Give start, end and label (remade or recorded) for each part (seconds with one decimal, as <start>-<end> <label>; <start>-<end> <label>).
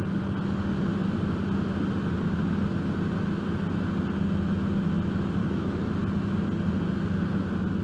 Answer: 0.0-5.4 recorded; 5.4-5.9 remade; 5.9-7.8 recorded